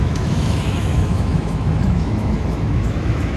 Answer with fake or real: fake